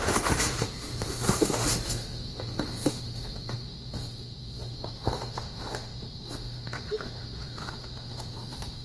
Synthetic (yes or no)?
yes